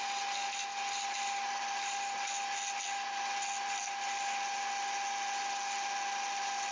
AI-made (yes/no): no